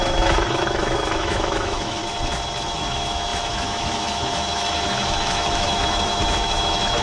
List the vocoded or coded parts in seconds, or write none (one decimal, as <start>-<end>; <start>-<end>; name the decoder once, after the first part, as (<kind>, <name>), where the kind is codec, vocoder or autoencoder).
0.0-2.0 (autoencoder, DAC-VAE); 2.6-7.0